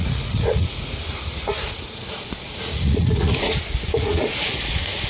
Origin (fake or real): fake